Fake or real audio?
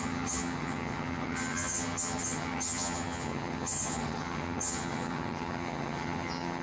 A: fake